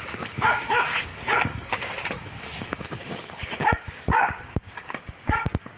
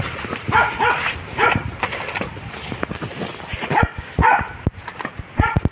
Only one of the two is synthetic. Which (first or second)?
first